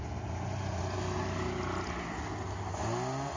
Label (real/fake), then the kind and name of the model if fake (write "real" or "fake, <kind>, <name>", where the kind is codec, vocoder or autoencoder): real